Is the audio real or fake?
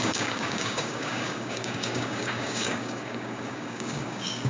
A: fake